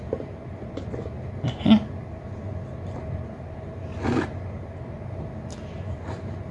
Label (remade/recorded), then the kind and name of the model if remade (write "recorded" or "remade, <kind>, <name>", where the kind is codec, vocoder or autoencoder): recorded